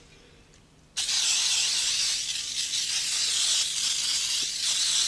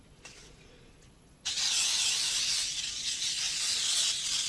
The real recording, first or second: first